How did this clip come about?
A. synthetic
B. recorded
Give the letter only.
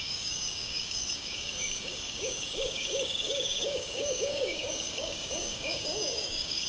A